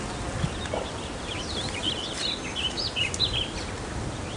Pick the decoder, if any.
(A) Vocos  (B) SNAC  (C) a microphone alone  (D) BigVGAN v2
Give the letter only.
C